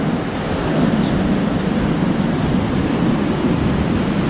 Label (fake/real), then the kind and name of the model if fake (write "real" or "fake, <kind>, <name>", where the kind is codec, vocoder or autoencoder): real